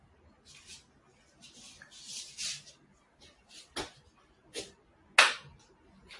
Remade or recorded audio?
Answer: recorded